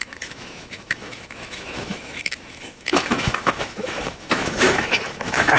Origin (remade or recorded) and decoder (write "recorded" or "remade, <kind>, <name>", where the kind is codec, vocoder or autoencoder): remade, autoencoder, DAC-VAE